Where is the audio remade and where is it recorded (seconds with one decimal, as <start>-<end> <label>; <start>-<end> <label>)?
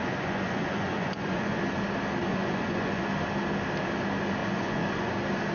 0.0-1.6 remade; 1.6-2.3 recorded; 2.3-3.0 remade; 3.0-4.4 recorded; 4.4-5.1 remade; 5.1-5.5 recorded